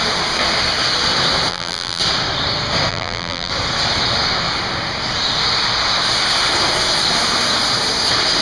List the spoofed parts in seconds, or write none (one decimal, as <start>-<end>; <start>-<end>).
1.5-2.0; 2.9-3.5